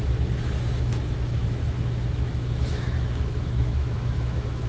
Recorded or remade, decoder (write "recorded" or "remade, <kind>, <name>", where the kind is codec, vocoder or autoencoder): remade, autoencoder, DAC-VAE